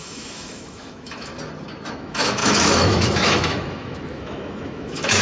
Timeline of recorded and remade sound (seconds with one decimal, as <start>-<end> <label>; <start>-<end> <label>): 0.0-1.3 remade; 1.3-1.9 recorded; 1.9-5.2 remade